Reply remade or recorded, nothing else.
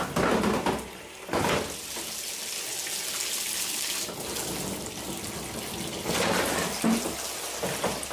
recorded